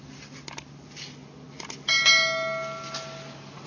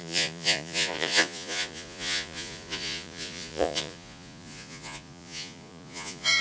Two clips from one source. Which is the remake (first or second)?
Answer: second